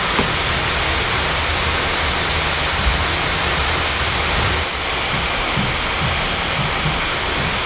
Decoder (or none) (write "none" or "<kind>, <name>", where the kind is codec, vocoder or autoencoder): none